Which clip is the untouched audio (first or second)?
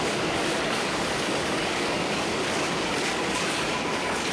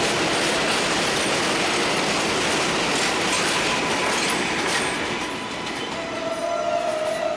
second